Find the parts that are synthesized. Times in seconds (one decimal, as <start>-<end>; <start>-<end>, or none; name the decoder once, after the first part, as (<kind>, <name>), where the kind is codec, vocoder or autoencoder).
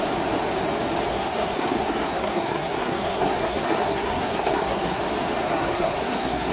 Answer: 1.1-5.0 (codec, SNAC); 5.4-6.5